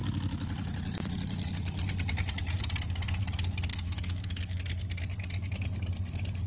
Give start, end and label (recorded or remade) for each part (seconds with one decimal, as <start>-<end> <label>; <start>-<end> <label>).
0.0-3.7 recorded; 3.7-4.6 remade; 4.6-6.5 recorded